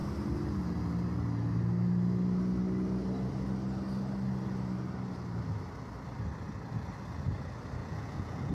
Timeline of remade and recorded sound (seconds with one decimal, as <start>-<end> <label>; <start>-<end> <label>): 0.0-7.8 recorded; 7.8-8.5 remade